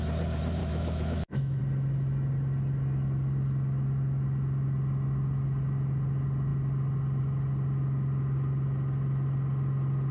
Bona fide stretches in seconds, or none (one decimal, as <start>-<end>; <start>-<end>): 0.0-0.6; 1.6-10.1